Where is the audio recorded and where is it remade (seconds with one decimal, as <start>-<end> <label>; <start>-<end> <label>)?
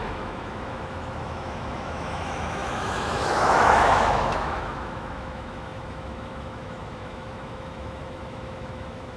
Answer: 0.0-9.2 remade